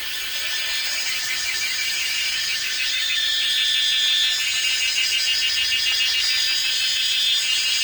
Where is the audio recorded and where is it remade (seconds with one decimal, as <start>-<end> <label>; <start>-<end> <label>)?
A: 0.0-0.8 recorded; 0.8-3.5 remade; 3.5-7.8 recorded